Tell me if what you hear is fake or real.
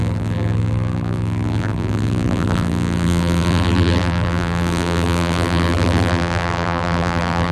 fake